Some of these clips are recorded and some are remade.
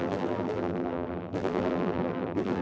remade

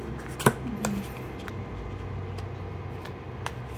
recorded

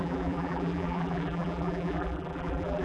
remade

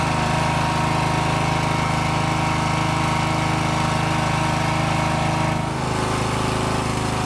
recorded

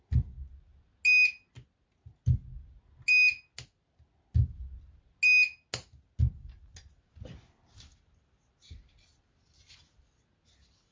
recorded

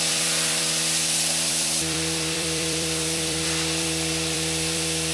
remade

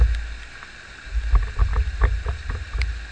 recorded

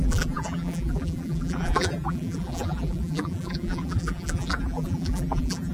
remade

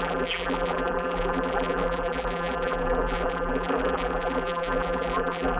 remade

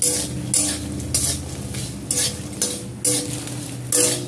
recorded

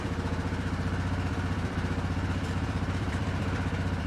remade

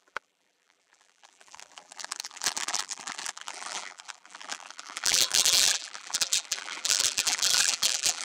remade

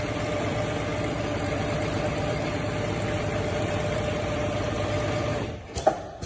remade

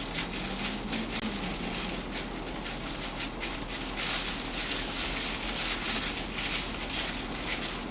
recorded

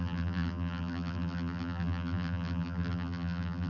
remade